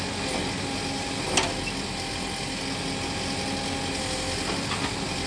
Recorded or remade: recorded